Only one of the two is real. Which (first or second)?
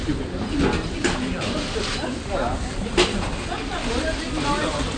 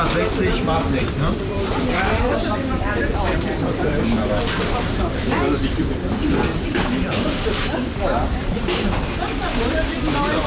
first